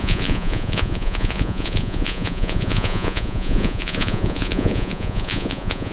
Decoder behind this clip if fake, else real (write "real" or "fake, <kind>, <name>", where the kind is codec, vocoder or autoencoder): fake, vocoder, Vocos